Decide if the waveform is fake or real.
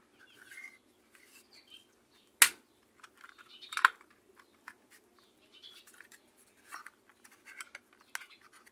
real